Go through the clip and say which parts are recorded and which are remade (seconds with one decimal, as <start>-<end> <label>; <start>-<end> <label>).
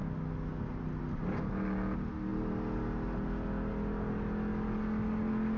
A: 0.0-5.6 recorded